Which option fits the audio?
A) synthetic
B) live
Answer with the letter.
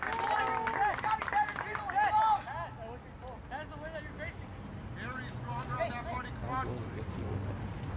B